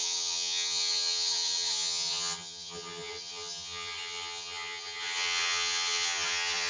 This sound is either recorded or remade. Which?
remade